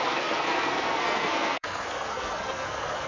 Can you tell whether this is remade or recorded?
remade